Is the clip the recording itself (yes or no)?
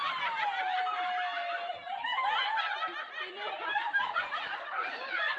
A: yes